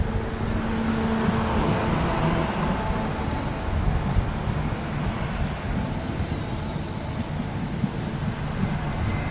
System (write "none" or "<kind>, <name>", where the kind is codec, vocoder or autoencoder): none